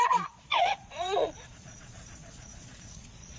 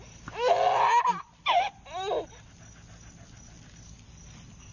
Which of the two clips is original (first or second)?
second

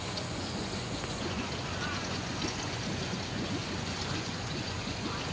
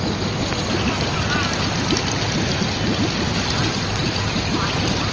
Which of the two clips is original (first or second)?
second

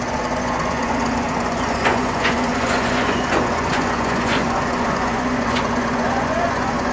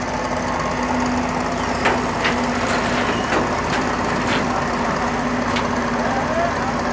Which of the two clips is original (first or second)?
second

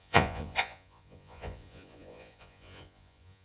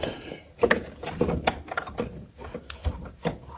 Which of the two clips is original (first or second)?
second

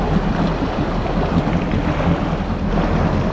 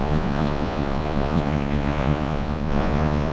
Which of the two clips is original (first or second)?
first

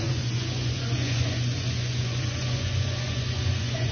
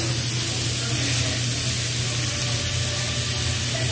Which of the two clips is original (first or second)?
second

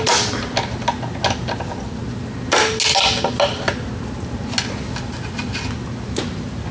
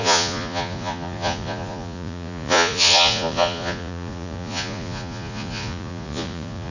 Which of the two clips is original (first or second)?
first